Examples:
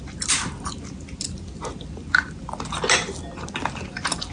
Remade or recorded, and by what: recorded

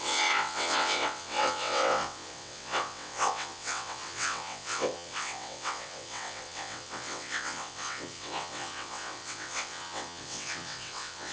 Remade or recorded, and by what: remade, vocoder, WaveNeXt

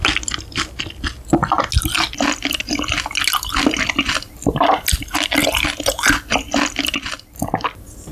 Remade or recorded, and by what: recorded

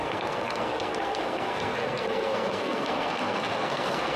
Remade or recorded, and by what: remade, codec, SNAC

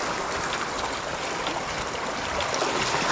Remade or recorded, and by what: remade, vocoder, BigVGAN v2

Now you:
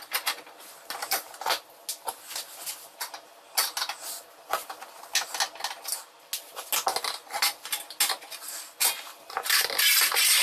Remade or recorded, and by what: recorded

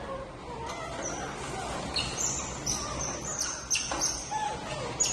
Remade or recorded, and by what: recorded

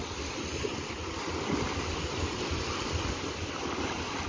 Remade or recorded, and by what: recorded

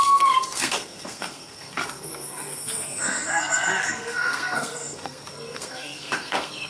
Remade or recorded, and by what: remade, codec, SNAC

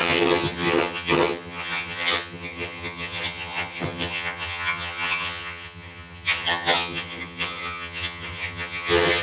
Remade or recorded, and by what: remade, vocoder, HiFi-GAN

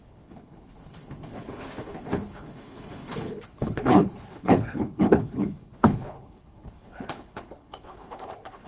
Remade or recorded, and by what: remade, codec, HILCodec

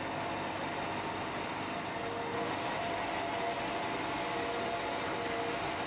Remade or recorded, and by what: recorded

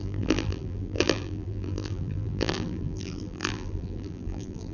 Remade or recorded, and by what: remade, vocoder, BigVGAN v2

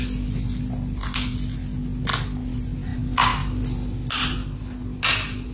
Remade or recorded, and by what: recorded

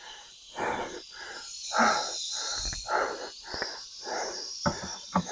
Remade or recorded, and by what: remade, vocoder, BigVGAN v2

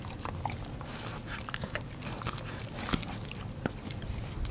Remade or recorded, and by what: recorded